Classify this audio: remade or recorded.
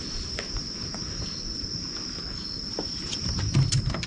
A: recorded